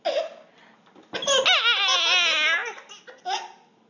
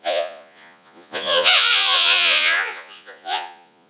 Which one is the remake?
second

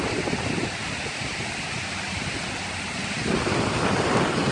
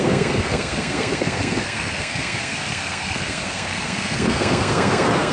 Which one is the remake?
second